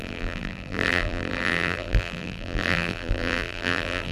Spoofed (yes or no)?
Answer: yes